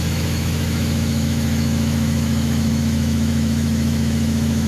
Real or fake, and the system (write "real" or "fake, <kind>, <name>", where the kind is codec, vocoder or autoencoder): fake, autoencoder, DAC-VAE